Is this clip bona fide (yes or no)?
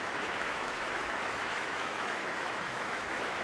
no